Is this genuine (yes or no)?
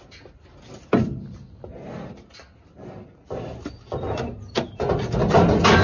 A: yes